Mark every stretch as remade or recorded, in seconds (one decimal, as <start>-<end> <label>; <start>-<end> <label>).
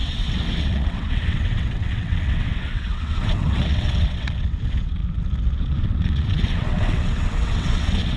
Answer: 0.0-5.0 remade; 5.0-5.6 recorded; 5.6-8.2 remade